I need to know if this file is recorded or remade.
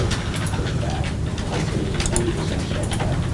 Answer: recorded